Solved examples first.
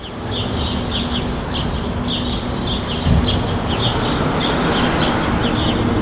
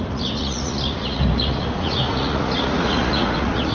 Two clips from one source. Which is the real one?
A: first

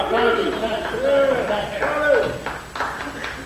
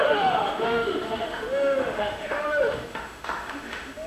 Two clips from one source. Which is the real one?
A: first